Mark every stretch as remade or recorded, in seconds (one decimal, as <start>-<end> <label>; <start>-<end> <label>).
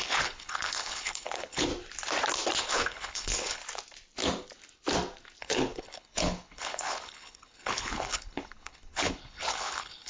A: 0.0-1.7 remade; 1.7-2.6 recorded; 2.6-3.6 remade; 3.6-5.4 recorded; 5.4-10.1 remade